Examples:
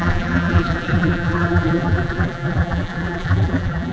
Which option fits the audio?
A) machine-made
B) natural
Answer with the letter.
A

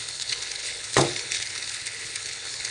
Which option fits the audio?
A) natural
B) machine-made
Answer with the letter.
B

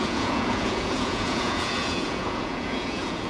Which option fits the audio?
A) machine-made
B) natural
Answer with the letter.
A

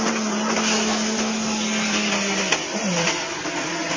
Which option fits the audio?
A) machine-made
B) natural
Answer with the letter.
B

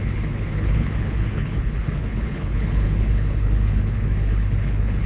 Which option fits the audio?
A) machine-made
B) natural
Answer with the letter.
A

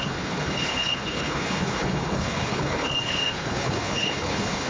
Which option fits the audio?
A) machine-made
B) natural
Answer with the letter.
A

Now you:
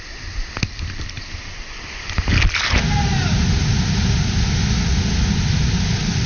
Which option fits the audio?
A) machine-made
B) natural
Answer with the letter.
B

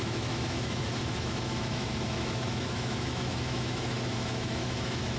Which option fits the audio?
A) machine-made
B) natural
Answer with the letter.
A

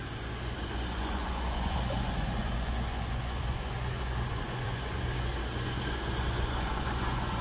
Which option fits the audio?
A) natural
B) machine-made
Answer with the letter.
B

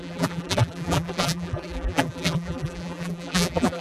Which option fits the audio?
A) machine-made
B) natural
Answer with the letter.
A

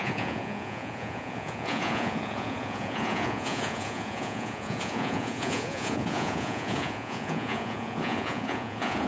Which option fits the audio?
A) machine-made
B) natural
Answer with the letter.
A